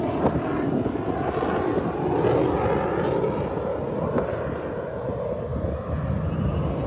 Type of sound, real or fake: real